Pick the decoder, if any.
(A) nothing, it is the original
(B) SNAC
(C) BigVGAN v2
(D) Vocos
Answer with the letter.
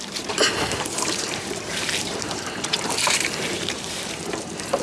C